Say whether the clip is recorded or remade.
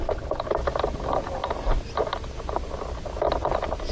recorded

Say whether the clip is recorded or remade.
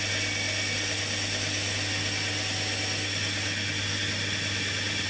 recorded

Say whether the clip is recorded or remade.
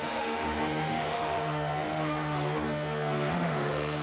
remade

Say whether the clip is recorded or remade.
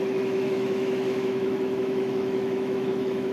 remade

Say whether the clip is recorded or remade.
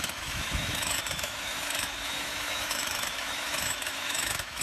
remade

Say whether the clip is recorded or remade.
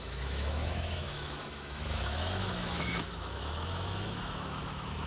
remade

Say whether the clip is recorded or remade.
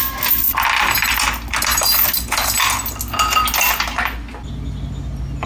recorded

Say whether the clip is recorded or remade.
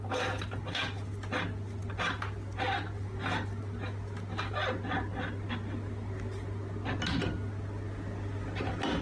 recorded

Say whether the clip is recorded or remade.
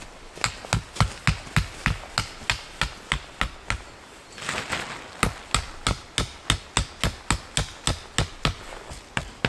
recorded